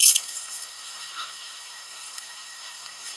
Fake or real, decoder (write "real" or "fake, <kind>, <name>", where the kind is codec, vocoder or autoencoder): fake, codec, SNAC